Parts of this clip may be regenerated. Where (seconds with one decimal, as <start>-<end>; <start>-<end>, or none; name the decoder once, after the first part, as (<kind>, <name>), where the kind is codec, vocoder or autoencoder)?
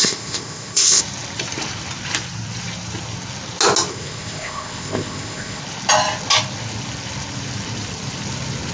0.0-1.0 (codec, ZipCodec); 3.9-5.6